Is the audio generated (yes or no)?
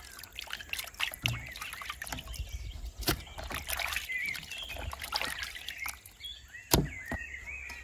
no